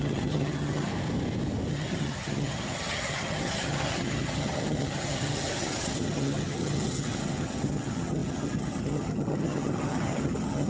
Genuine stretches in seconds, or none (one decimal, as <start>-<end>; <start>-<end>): 0.9-1.7